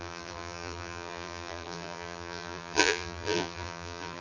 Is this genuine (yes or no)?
no